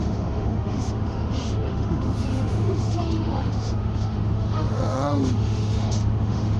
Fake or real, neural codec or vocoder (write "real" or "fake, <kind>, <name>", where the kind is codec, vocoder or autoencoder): fake, autoencoder, DAC-VAE